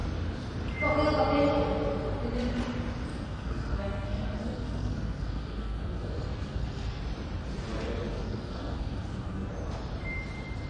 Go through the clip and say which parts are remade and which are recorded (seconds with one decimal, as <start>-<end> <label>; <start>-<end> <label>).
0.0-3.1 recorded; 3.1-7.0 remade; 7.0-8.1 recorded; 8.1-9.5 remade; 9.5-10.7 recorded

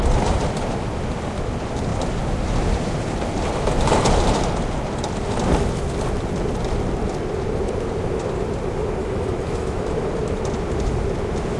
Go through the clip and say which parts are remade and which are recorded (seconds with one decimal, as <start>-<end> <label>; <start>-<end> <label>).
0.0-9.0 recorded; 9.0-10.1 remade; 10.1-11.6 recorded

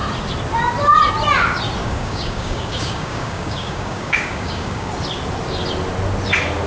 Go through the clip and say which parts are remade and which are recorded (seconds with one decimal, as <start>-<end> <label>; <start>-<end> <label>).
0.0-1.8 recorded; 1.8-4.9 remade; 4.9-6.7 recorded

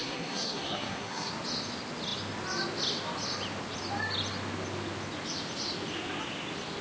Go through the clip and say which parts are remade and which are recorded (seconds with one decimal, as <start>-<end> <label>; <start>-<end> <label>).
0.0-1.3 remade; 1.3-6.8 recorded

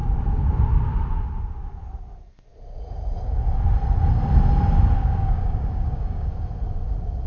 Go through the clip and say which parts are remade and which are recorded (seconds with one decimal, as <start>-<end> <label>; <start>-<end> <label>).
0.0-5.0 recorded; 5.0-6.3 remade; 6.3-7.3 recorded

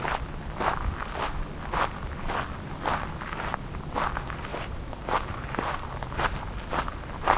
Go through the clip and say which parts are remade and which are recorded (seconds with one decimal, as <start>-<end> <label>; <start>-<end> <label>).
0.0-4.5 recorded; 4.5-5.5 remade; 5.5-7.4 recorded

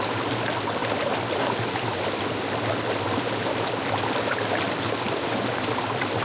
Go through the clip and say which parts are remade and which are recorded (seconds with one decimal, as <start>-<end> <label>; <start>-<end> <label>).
0.0-6.2 recorded